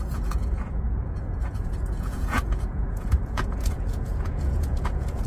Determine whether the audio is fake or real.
fake